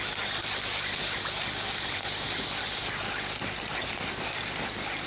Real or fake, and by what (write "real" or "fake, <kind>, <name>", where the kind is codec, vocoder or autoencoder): real